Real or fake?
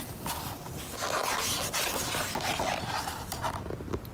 real